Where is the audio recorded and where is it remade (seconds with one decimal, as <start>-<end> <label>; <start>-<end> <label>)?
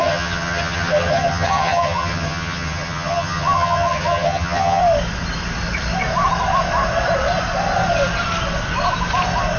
0.0-4.8 remade; 4.8-9.6 recorded